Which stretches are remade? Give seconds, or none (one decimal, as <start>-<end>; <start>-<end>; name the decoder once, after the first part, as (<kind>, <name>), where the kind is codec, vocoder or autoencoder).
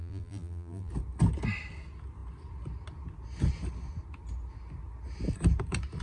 0.0-0.9 (vocoder, BigVGAN v2)